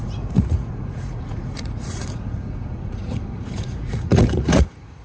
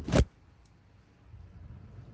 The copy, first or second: first